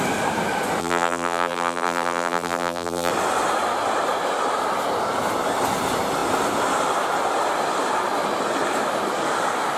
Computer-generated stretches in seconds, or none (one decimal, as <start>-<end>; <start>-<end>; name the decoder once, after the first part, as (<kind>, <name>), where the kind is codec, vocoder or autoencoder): 0.8-3.1 (vocoder, BigVGAN v2)